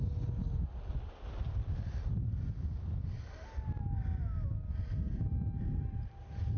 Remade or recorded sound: recorded